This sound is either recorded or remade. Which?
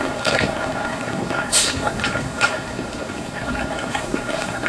remade